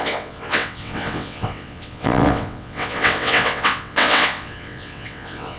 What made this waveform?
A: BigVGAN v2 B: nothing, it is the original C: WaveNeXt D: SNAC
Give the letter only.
C